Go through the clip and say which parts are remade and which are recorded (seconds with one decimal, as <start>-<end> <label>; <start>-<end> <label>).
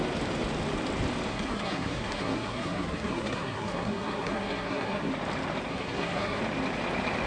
0.0-1.3 recorded; 1.3-5.1 remade; 5.1-5.7 recorded; 5.7-6.4 remade; 6.4-7.3 recorded